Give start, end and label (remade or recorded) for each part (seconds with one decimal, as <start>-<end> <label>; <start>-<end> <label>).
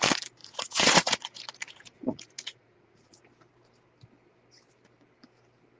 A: 0.0-0.4 recorded; 0.4-3.2 remade; 3.2-5.8 recorded